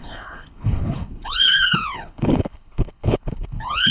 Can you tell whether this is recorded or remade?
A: remade